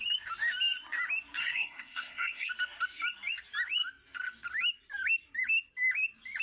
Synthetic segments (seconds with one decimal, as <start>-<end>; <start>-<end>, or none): 1.4-2.5